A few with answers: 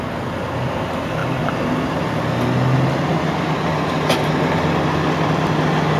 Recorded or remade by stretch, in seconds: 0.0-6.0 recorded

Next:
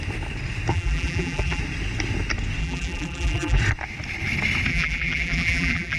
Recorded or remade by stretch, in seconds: 0.0-0.7 recorded; 0.7-1.6 remade; 1.6-2.6 recorded; 2.6-3.6 remade; 3.6-4.7 recorded; 4.7-6.0 remade

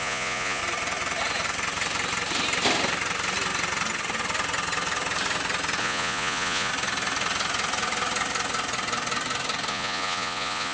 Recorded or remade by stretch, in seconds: 0.0-0.6 remade; 0.6-5.8 recorded; 5.8-6.7 remade; 6.7-9.7 recorded; 9.7-10.7 remade

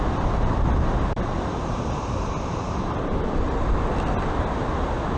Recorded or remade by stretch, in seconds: 0.0-1.5 recorded; 1.5-3.5 remade; 3.5-5.2 recorded

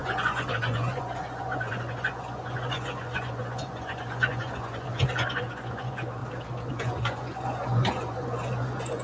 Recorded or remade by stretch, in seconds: 0.0-6.2 remade; 6.2-6.7 recorded; 6.7-9.0 remade

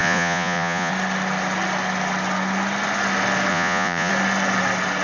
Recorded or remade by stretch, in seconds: 0.0-0.9 remade; 0.9-3.5 recorded; 3.5-4.1 remade; 4.1-5.0 recorded